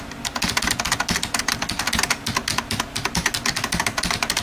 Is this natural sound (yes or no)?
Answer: yes